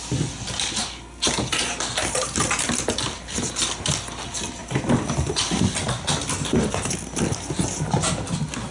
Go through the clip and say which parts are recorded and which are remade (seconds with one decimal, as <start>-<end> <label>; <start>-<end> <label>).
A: 0.0-8.7 recorded